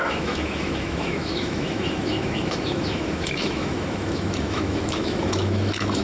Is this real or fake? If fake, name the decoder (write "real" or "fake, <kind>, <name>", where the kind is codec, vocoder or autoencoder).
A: fake, autoencoder, DAC-VAE